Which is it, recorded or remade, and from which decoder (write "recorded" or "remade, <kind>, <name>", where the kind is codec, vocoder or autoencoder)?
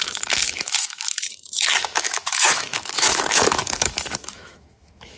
remade, autoencoder, DAC-VAE